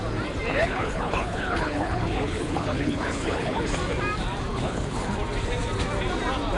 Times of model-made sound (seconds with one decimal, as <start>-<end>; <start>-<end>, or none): 0.5-3.6; 4.5-5.1